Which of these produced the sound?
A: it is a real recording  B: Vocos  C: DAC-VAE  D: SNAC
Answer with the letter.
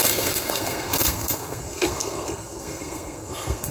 D